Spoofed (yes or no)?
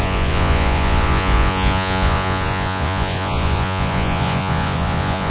yes